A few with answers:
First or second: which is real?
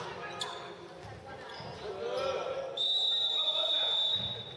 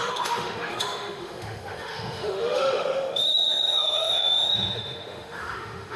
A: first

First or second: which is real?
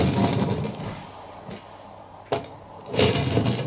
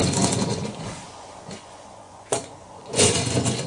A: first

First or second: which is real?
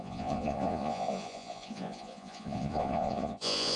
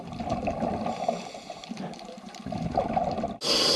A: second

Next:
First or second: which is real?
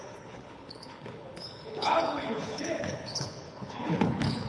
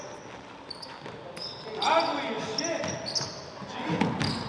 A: second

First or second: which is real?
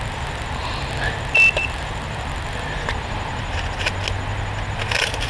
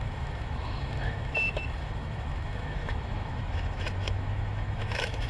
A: first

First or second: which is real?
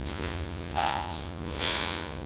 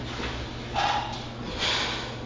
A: second